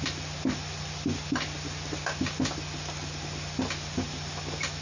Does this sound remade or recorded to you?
recorded